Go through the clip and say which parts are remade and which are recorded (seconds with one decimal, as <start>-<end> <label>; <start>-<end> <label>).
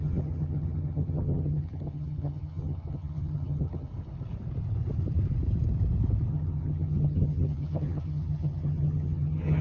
0.0-3.9 remade; 3.9-6.3 recorded; 6.3-9.6 remade